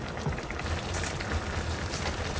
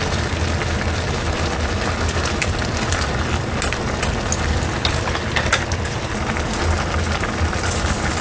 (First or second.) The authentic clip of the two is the second